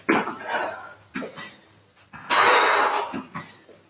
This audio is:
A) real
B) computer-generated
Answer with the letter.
A